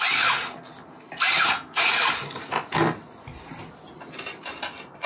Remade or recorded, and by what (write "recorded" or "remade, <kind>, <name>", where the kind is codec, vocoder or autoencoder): recorded